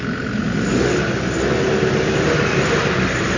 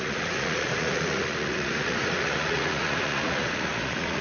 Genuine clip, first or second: first